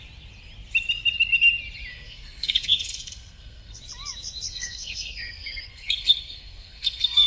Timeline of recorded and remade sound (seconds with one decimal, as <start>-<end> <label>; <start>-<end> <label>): 0.0-1.9 recorded; 1.9-3.8 remade; 3.8-4.5 recorded; 4.5-7.3 remade